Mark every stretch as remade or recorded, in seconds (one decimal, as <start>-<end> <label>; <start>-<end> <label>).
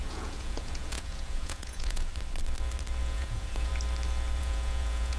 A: 0.0-2.1 remade; 2.1-3.0 recorded; 3.0-3.7 remade; 3.7-4.4 recorded; 4.4-5.2 remade